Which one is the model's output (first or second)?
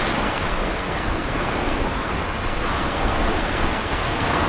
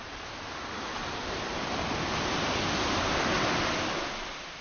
first